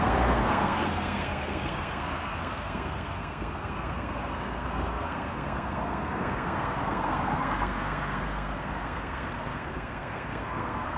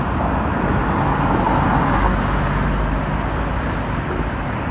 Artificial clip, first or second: first